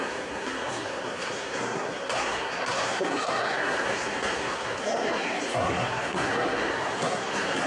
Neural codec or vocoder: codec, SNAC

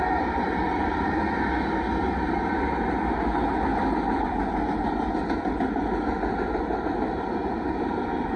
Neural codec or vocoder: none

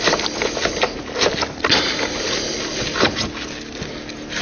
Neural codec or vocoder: none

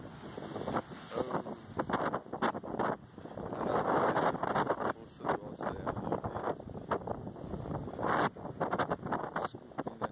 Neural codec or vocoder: none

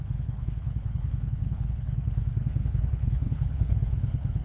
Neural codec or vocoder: codec, HILCodec